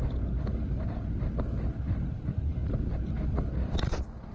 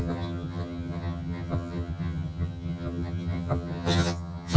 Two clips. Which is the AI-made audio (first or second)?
second